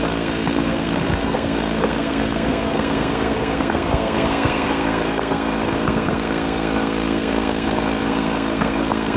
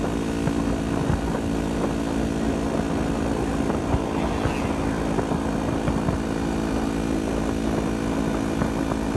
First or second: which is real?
second